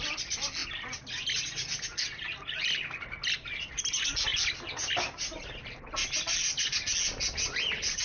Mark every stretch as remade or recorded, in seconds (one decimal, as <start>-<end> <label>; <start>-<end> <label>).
0.0-8.0 recorded